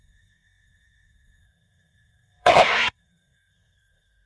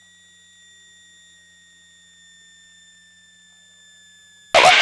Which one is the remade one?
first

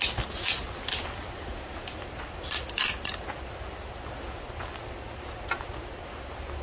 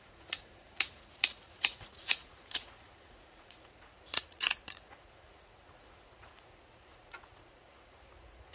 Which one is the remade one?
second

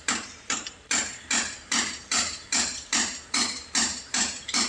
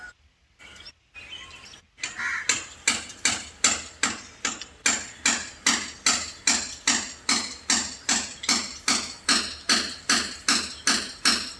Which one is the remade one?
first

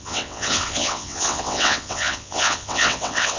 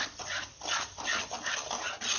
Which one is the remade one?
first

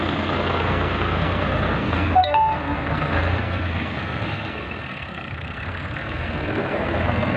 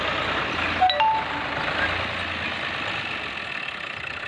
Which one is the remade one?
first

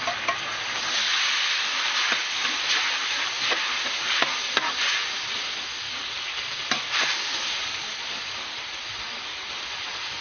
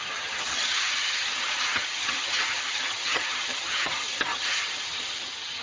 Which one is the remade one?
second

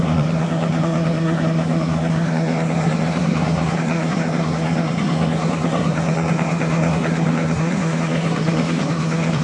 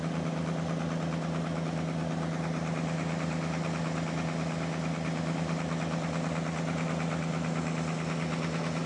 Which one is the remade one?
first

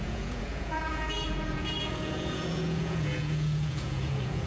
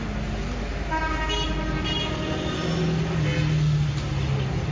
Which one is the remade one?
first